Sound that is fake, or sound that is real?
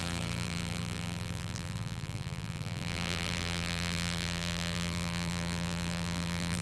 fake